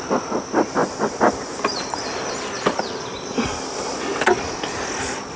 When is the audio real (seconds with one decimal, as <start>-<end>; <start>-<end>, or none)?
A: 0.0-5.4